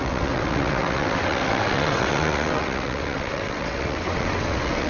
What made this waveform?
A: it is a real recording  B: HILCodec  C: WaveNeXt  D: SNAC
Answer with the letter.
C